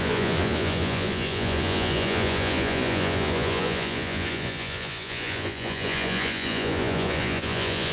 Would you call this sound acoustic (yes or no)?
no